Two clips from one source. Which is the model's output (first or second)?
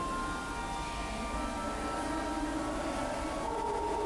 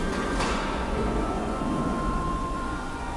second